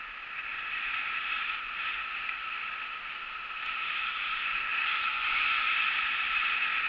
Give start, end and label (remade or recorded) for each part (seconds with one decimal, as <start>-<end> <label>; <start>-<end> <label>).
0.0-4.7 recorded; 4.7-5.7 remade; 5.7-6.9 recorded